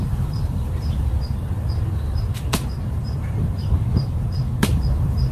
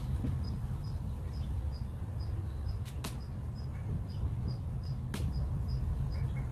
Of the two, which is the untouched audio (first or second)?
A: second